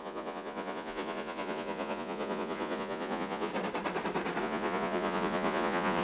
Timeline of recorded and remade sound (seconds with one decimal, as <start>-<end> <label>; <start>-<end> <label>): 0.0-3.5 remade; 3.5-4.4 recorded; 4.4-6.0 remade